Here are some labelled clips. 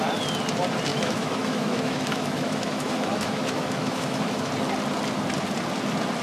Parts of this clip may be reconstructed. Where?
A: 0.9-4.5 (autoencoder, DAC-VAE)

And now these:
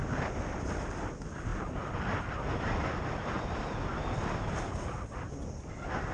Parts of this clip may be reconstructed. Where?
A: none

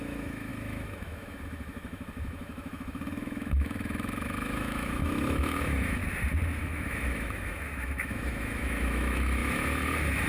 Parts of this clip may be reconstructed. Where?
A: 0.0-6.0 (autoencoder, DAC-VAE); 6.6-10.3

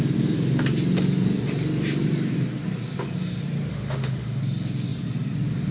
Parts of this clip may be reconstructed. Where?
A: 3.7-4.4 (autoencoder, DAC-VAE)